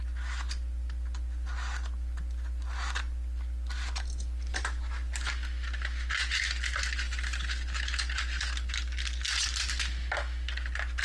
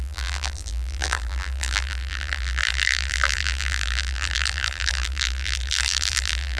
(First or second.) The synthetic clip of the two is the second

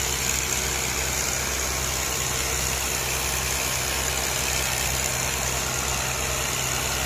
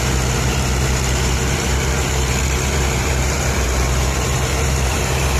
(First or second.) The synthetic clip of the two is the second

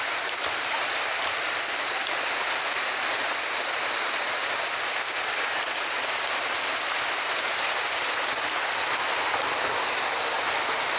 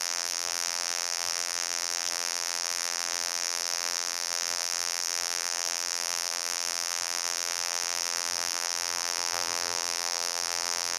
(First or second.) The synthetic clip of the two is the second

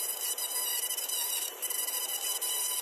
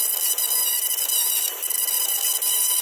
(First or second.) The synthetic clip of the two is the first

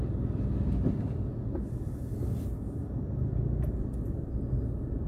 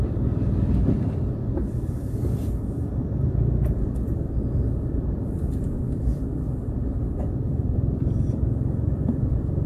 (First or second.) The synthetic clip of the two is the second